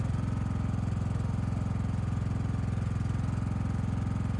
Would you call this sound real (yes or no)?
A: yes